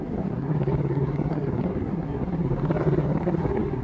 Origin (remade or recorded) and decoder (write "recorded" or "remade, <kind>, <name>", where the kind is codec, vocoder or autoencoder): remade, codec, SNAC